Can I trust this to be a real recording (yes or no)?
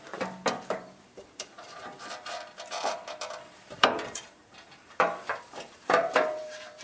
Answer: no